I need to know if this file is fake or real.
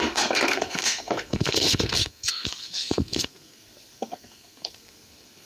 fake